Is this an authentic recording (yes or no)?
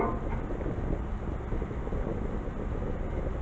yes